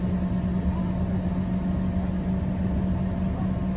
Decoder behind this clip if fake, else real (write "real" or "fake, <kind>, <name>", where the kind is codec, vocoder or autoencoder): real